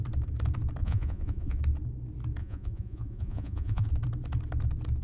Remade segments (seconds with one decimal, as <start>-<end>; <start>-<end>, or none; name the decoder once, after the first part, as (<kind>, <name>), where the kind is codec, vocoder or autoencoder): 0.8-1.6 (vocoder, Vocos); 2.4-3.9